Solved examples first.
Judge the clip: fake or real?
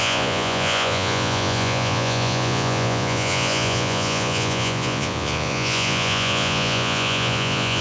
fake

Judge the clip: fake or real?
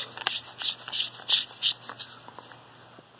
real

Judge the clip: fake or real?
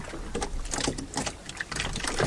real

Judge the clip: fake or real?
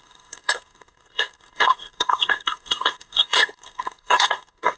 fake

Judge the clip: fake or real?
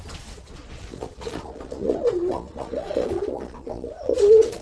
fake